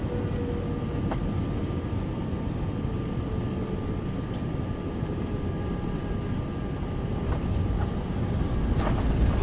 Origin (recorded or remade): recorded